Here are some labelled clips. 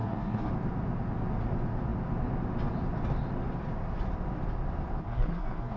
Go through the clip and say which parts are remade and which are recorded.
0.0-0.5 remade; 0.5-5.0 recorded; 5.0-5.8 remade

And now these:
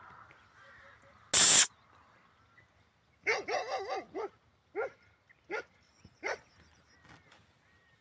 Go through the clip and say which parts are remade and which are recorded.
0.0-8.0 recorded

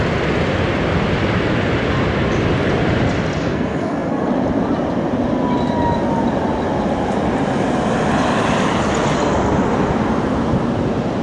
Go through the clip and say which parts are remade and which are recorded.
0.0-3.4 recorded; 3.4-4.3 remade; 4.3-11.2 recorded

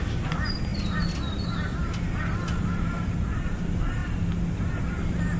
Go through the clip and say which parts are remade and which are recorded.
0.0-5.4 recorded

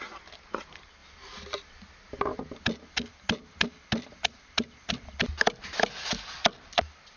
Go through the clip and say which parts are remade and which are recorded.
0.0-7.2 recorded

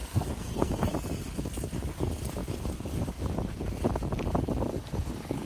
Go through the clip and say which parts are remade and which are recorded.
0.0-0.9 remade; 0.9-5.5 recorded